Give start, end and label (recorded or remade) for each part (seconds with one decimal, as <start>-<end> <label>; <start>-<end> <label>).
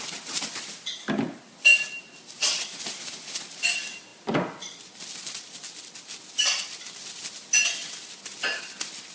0.0-9.1 recorded